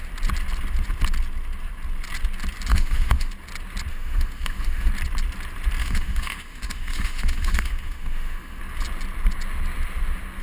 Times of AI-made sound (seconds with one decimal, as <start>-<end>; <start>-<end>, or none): 2.7-3.3; 3.9-4.9; 5.8-8.6

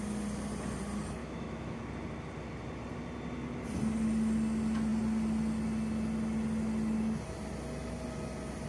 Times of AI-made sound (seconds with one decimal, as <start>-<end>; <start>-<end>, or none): 1.2-1.8

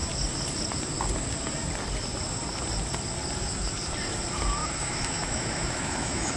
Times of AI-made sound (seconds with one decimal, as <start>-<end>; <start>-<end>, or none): 4.6-6.4

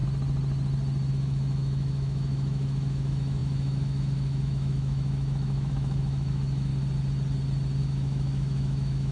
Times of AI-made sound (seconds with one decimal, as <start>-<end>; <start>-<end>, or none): 1.1-6.7; 7.8-9.1